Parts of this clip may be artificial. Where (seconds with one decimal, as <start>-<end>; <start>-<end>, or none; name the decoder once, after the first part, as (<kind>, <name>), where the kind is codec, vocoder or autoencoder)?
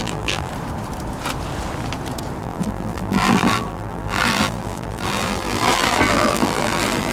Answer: 0.0-0.5 (vocoder, BigVGAN v2); 2.4-7.1